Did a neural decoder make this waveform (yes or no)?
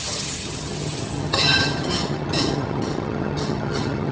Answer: yes